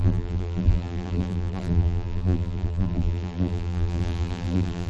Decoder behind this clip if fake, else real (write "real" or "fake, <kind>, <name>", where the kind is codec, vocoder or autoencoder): fake, vocoder, BigVGAN v2